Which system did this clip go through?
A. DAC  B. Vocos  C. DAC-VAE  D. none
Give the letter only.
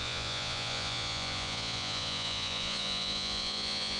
B